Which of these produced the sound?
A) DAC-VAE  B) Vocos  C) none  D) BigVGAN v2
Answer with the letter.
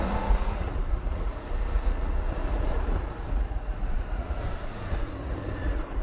B